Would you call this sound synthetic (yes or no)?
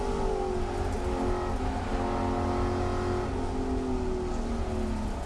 no